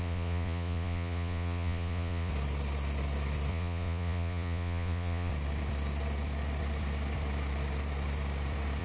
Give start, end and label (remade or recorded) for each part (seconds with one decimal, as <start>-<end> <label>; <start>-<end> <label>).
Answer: 0.0-2.3 remade; 2.3-3.5 recorded; 3.5-5.3 remade; 5.3-8.8 recorded